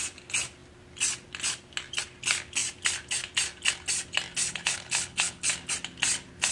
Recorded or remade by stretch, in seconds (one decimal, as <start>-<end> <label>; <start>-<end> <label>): 0.0-4.5 recorded; 4.5-5.5 remade; 5.5-6.5 recorded